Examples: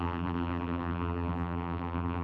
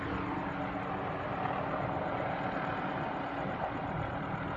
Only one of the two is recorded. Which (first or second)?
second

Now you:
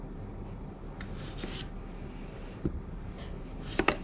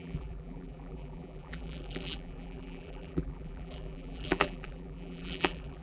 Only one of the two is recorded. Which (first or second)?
first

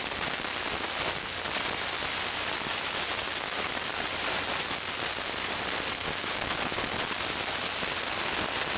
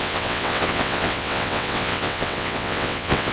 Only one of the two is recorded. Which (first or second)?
first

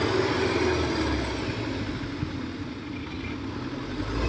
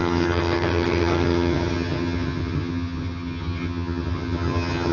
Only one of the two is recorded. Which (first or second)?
first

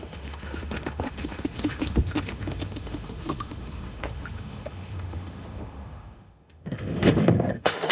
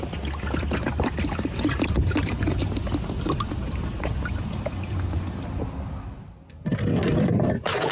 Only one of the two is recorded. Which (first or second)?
second